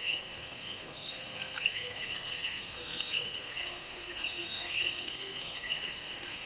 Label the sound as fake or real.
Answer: fake